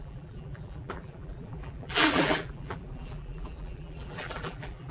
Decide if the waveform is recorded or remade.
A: remade